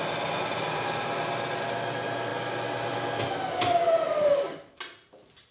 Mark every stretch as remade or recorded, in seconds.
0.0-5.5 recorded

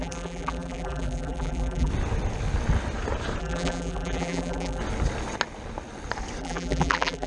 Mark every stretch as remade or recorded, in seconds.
0.0-1.9 remade; 1.9-3.4 recorded; 3.4-4.8 remade; 4.8-6.4 recorded; 6.4-7.3 remade